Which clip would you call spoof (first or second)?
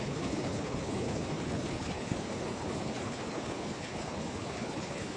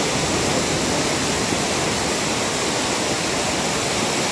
first